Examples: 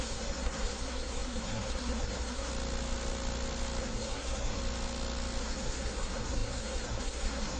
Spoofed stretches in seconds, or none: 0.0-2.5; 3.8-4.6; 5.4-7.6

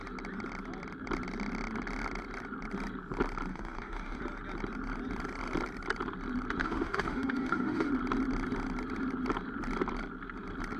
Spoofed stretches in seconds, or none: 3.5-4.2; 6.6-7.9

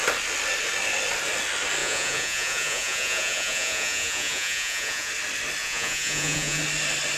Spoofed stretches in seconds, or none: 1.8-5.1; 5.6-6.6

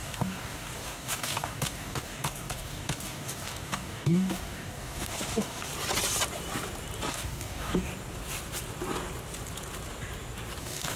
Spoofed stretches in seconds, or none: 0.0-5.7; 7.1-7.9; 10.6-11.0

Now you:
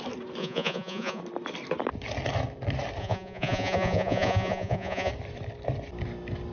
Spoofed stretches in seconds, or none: 0.4-1.2; 3.0-5.1